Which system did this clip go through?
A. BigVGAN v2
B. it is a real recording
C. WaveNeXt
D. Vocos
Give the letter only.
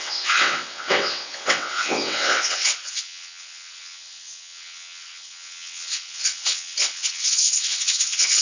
C